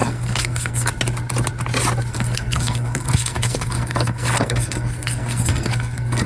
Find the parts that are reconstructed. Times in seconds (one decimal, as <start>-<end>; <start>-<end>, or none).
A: 0.0-0.9; 2.1-6.3